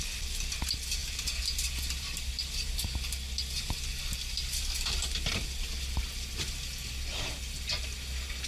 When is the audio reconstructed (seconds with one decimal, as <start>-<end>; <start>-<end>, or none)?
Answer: none